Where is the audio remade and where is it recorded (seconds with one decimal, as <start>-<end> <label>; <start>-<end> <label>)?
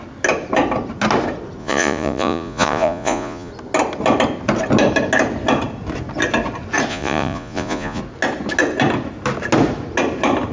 0.0-1.6 recorded; 1.6-3.5 remade; 3.5-6.9 recorded; 6.9-8.0 remade; 8.0-10.5 recorded